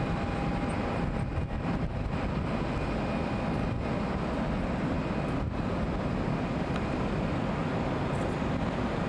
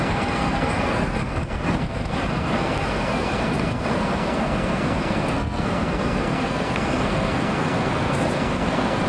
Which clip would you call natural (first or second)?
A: first